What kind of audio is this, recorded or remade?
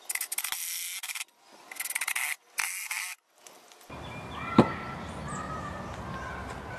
recorded